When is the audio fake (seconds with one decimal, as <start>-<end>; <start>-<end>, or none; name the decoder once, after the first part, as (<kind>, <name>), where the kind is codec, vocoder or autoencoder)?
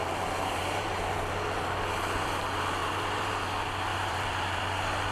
0.0-1.0 (vocoder, BigVGAN v2); 2.8-3.4; 3.9-4.6